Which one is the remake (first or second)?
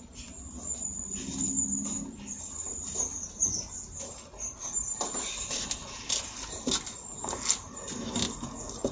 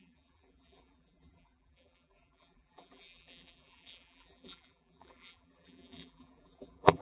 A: second